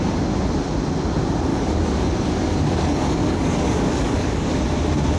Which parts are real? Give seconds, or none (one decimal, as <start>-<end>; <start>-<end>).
0.0-1.5; 4.6-5.2